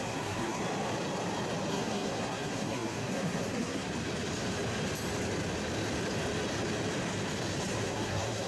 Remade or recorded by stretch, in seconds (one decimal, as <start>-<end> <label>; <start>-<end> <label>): 0.0-0.6 remade; 0.6-1.7 recorded; 1.7-3.9 remade; 3.9-7.8 recorded; 7.8-8.5 remade